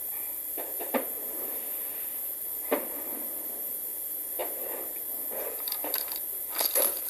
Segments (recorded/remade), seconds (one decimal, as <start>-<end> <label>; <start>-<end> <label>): 0.0-7.1 recorded